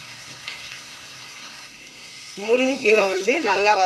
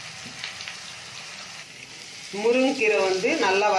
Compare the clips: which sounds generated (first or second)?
first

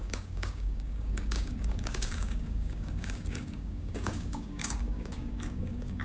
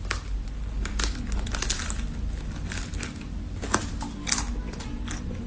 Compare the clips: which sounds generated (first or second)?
first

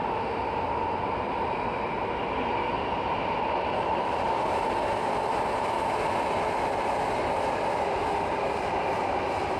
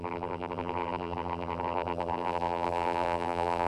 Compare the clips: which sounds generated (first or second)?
second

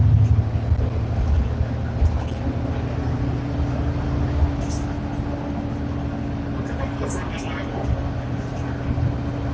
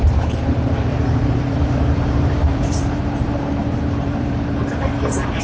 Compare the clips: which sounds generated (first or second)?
second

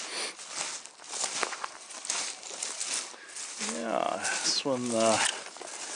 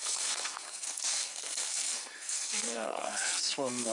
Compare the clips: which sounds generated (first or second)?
second